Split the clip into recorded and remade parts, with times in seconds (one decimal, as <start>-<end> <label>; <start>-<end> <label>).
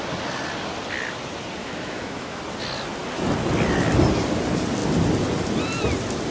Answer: 0.0-1.6 recorded; 1.6-2.4 remade; 2.4-6.3 recorded